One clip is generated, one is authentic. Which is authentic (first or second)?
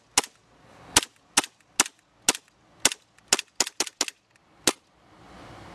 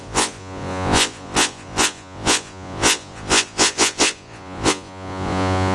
first